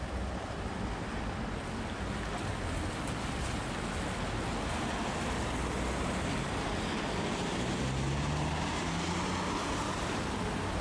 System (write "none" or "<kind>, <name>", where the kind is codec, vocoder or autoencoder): none